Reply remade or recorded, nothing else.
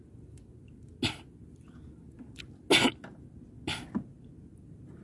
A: recorded